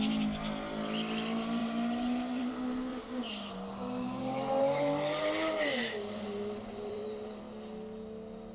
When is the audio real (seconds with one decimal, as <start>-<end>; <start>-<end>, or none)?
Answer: 0.0-1.6; 2.5-2.9; 7.4-8.5